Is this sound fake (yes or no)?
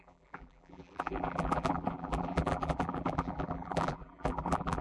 yes